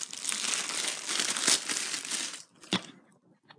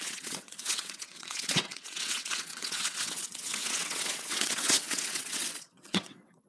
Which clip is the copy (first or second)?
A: second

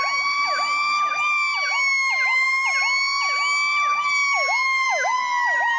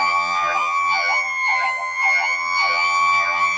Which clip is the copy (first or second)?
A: second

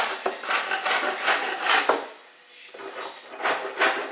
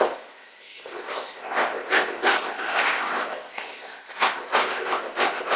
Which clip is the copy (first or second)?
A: second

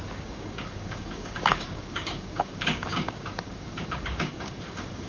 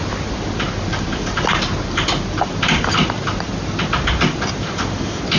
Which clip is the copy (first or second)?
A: first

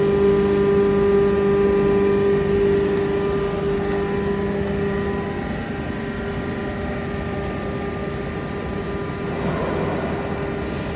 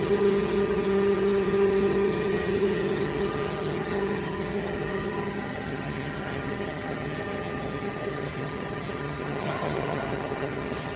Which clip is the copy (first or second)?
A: second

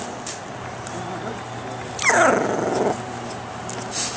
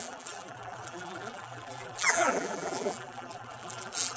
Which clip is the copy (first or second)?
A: second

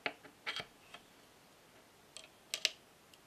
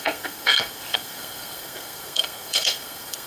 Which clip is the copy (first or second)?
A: second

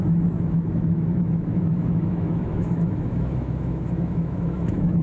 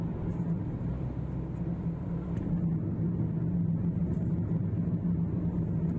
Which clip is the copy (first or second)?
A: first